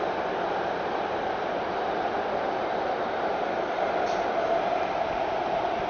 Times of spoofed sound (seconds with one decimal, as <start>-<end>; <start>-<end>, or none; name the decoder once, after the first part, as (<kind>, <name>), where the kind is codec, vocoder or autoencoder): none